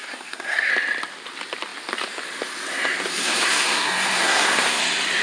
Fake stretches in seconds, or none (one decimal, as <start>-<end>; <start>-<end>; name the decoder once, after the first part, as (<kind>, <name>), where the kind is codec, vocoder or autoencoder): 0.0-0.7 (codec, SNAC); 3.1-4.8